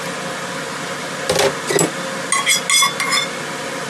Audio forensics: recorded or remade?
recorded